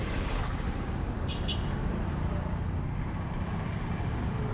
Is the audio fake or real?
real